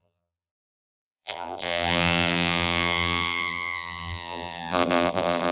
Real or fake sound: fake